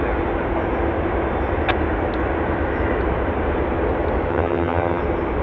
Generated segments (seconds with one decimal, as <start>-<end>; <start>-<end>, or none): 4.3-5.0